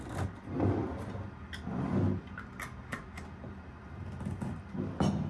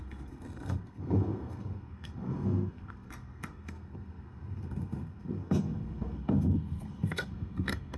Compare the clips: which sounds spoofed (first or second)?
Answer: second